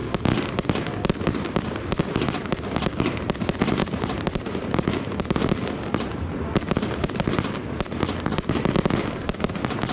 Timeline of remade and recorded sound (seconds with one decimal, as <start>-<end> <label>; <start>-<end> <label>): 0.0-3.8 recorded; 3.8-5.5 remade; 5.5-9.9 recorded